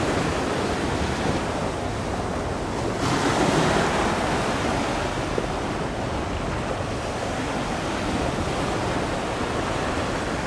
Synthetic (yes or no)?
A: no